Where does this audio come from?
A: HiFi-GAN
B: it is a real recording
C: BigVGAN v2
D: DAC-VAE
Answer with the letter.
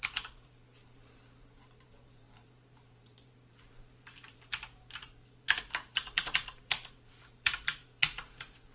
C